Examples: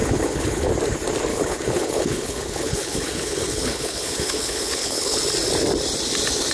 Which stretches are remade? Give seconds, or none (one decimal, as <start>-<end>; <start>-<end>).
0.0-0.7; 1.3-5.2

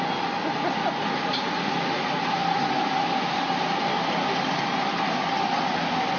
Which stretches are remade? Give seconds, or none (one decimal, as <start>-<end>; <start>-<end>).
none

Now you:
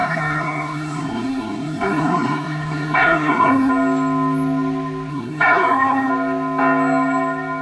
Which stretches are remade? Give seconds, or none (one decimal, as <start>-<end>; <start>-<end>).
0.0-3.7; 5.1-6.1